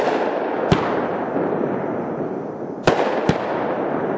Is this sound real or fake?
real